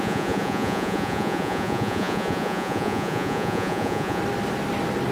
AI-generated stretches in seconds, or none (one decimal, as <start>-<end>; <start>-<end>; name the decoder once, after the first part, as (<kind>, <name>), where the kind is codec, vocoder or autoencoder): 0.0-4.2 (vocoder, Vocos)